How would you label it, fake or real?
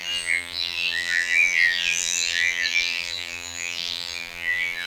fake